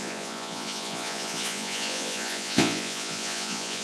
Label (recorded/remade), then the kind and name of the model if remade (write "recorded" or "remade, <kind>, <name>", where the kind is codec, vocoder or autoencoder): remade, vocoder, Vocos